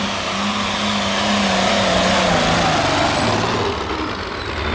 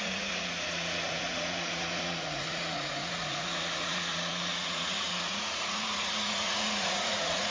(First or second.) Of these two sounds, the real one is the first